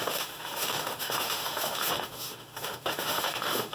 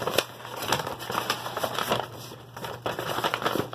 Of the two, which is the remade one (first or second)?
first